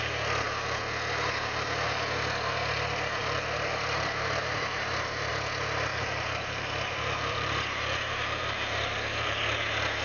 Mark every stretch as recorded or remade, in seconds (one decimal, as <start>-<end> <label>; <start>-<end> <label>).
0.0-3.2 recorded; 3.2-5.3 remade; 5.3-5.9 recorded; 5.9-9.4 remade; 9.4-10.0 recorded